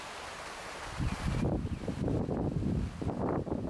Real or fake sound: fake